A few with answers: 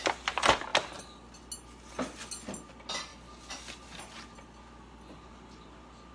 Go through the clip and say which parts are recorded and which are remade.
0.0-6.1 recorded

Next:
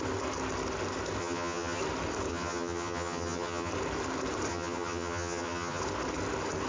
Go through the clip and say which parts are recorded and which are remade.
0.0-1.2 recorded; 1.2-1.8 remade; 1.8-2.3 recorded; 2.3-3.7 remade; 3.7-4.5 recorded; 4.5-5.8 remade; 5.8-6.7 recorded

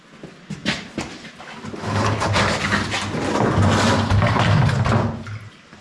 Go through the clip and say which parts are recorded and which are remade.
0.0-5.8 recorded

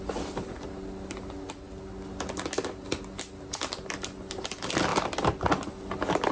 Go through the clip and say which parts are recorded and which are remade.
0.0-6.3 recorded

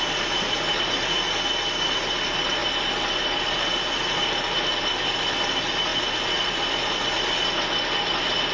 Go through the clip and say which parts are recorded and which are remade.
0.0-8.5 recorded

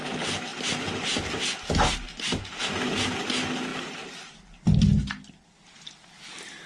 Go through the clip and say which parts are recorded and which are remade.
0.0-6.7 recorded